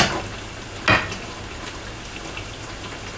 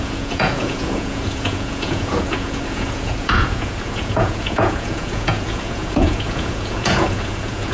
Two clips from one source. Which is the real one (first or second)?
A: first